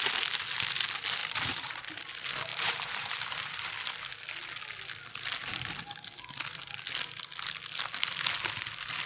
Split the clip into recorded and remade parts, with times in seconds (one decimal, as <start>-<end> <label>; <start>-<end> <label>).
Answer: 0.0-1.2 recorded; 1.2-1.8 remade; 1.8-2.5 recorded; 2.5-3.7 remade; 3.7-9.1 recorded